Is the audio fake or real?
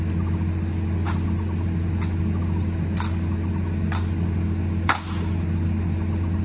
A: real